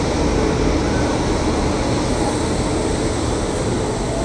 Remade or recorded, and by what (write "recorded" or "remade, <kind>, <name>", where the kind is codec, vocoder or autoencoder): recorded